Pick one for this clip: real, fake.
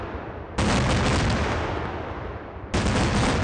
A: real